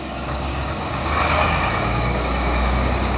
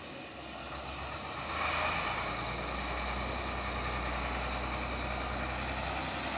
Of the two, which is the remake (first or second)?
first